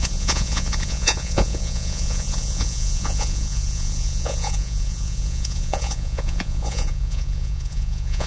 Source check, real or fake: fake